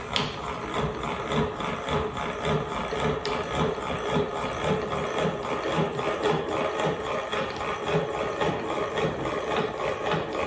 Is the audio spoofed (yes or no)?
no